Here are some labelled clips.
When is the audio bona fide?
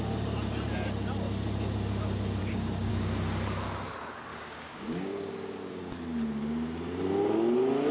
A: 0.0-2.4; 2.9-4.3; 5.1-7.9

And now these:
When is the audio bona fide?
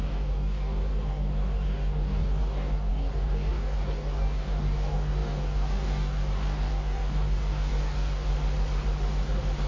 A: 8.3-9.7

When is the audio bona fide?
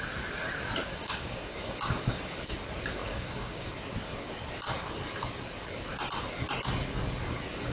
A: 0.0-0.9; 2.4-3.0; 3.7-7.7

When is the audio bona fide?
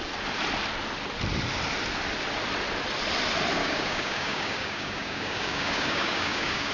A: 0.0-3.6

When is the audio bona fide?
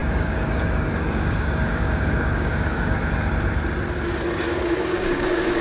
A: 3.3-4.5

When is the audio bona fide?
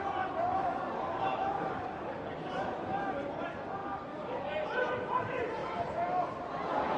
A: 0.0-0.5; 2.5-3.8; 4.4-7.0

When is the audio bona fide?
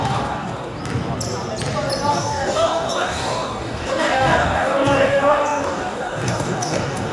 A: 0.8-2.1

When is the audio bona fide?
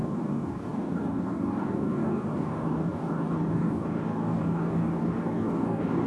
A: none